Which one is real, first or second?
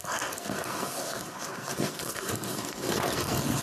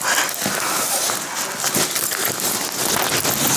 second